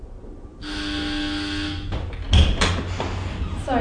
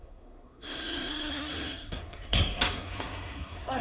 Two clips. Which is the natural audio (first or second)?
first